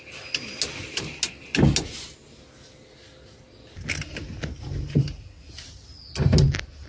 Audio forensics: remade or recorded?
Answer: recorded